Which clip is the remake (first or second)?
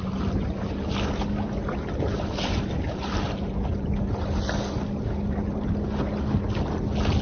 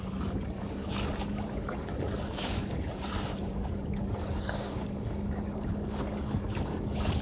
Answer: second